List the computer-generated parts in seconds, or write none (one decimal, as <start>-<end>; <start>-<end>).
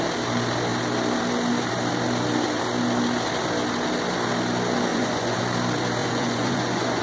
4.9-5.4; 6.0-7.0